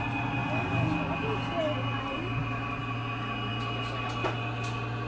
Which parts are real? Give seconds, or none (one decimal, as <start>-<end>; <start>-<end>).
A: 0.0-5.1